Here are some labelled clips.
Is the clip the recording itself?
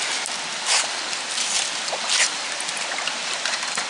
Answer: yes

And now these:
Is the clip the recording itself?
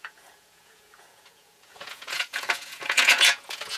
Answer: no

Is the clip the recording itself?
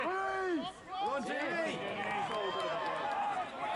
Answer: yes